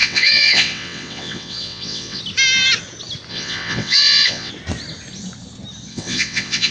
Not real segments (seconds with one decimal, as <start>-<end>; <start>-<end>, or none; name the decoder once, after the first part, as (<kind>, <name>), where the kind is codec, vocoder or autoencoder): 0.0-2.2 (vocoder, WaveNeXt); 3.3-4.5; 5.9-6.7

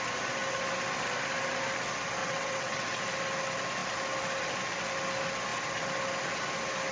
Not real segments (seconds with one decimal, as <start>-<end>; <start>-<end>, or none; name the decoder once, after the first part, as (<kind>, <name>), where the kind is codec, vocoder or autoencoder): 2.2-3.0 (vocoder, WaveNeXt)

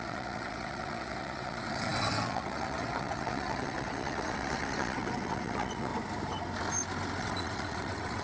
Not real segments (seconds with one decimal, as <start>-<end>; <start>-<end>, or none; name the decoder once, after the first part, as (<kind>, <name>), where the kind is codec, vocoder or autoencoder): 0.0-5.9 (vocoder, WaveNeXt); 7.2-8.2

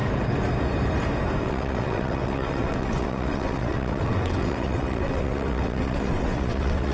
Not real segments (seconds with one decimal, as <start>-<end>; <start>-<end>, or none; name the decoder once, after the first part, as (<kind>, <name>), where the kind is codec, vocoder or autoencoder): 1.4-6.9 (vocoder, WaveNeXt)